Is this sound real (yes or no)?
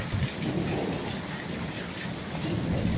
yes